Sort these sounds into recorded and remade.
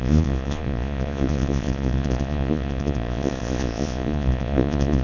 remade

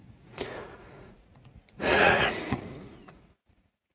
remade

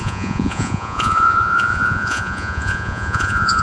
remade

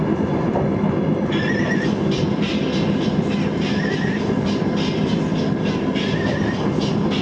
recorded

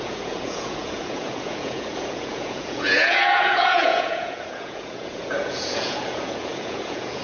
remade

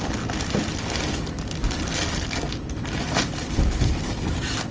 recorded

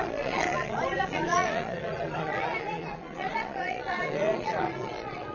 remade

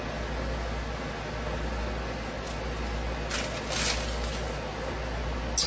recorded